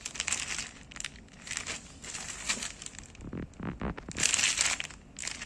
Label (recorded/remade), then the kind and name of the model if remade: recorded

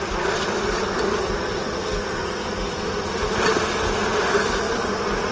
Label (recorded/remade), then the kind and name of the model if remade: recorded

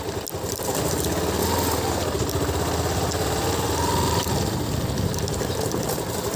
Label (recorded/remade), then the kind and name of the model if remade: recorded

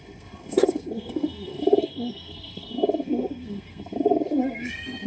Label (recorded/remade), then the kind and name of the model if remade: remade, codec, SNAC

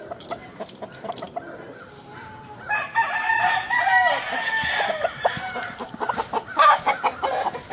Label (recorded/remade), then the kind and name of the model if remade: recorded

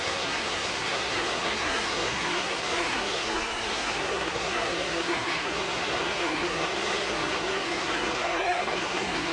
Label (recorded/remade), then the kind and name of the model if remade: remade, codec, SNAC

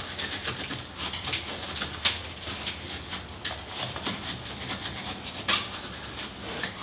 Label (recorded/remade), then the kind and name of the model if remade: recorded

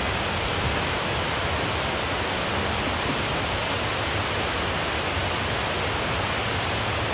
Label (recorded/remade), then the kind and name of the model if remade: recorded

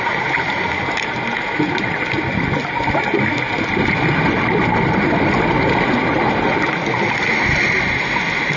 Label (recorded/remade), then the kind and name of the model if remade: recorded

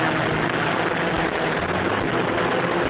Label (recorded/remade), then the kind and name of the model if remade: recorded